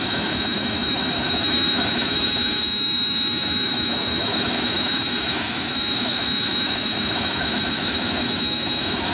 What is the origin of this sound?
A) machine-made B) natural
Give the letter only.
A